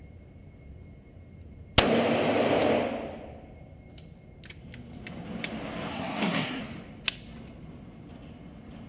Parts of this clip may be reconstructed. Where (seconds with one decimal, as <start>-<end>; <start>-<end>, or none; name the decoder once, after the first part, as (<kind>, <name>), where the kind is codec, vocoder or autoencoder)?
5.9-6.6 (codec, SNAC)

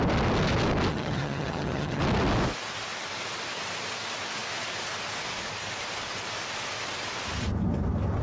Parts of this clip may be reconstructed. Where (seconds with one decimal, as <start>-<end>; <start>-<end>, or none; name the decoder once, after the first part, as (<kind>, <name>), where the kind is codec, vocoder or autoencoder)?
0.9-2.0 (vocoder, HiFi-GAN)

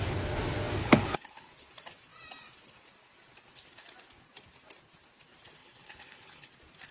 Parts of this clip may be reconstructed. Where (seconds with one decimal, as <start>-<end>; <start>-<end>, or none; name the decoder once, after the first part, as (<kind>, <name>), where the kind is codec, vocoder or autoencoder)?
0.8-1.5 (codec, HILCodec); 5.6-6.5

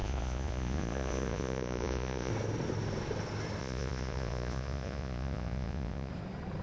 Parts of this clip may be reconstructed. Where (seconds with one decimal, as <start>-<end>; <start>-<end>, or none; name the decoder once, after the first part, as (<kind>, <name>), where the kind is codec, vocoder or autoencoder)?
0.0-2.3 (vocoder, Vocos); 3.6-6.1

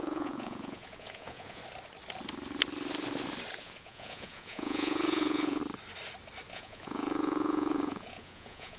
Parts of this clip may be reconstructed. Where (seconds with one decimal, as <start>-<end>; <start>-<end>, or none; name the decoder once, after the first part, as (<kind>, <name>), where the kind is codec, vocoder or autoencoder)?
0.0-1.6 (vocoder, Vocos); 3.6-5.6; 6.5-8.8

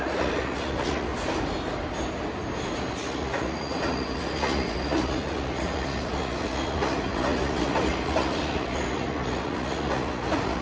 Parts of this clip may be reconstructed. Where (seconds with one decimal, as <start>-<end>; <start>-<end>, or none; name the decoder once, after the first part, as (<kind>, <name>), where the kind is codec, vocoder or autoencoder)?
0.0-1.1 (vocoder, Vocos); 2.9-10.6

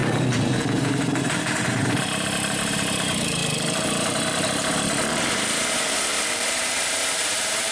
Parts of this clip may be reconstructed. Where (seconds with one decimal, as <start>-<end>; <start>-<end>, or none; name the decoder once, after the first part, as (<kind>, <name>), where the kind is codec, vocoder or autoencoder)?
0.6-3.4 (vocoder, BigVGAN v2); 4.0-7.7